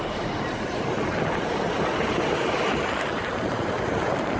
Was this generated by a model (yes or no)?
no